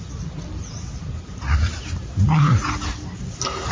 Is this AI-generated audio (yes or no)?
no